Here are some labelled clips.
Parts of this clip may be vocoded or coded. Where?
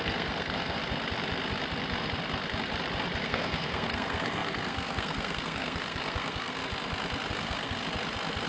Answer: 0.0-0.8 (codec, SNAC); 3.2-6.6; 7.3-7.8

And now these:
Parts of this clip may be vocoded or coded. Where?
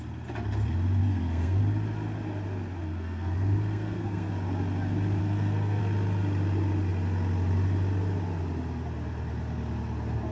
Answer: 1.0-1.6 (codec, SNAC); 2.8-4.3; 5.2-5.8